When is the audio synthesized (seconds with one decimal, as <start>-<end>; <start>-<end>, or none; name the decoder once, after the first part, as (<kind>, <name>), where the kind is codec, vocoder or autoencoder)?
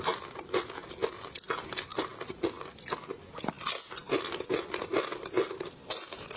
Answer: none